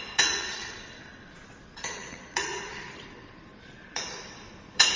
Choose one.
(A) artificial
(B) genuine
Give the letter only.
A